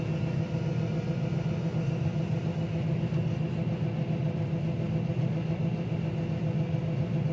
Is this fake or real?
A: real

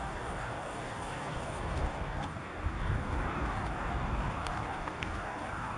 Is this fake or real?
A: fake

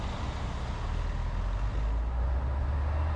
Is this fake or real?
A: real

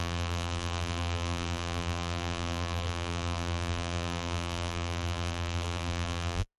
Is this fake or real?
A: fake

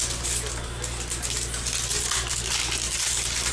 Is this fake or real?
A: real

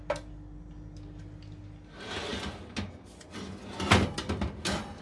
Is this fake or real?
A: real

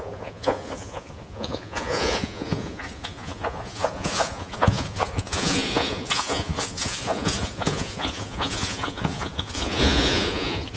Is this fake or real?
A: fake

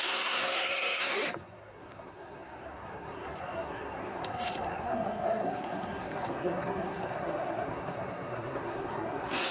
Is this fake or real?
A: fake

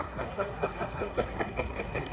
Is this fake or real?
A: fake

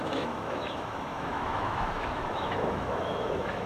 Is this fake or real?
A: fake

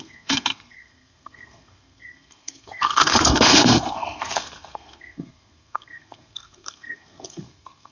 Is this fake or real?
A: fake